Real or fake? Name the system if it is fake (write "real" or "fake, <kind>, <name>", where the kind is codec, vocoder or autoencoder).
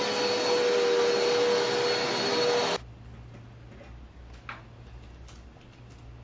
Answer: real